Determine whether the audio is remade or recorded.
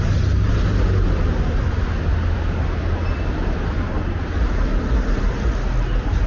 recorded